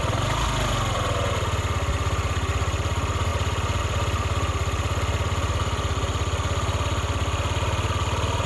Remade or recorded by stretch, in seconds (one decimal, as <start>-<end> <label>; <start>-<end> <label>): 0.0-8.5 recorded